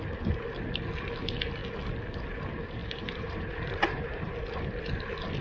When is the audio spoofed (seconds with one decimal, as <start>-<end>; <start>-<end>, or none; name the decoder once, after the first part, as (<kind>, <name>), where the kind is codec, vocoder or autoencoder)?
2.8-4.3 (vocoder, BigVGAN v2)

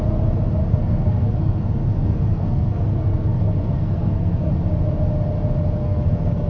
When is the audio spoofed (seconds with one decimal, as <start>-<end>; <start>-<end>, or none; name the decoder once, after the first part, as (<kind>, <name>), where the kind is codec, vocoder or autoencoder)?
0.6-4.5 (codec, SNAC); 5.8-6.5